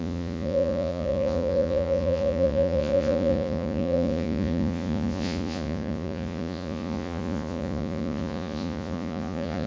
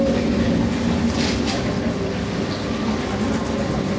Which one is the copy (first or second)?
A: first